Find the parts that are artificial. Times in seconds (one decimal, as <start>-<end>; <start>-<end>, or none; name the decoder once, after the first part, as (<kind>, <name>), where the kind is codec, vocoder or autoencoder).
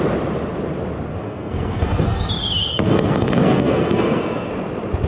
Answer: 1.1-2.3 (codec, SNAC); 2.7-4.5